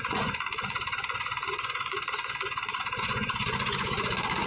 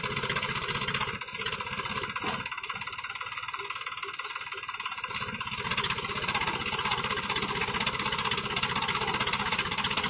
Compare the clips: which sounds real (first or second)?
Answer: second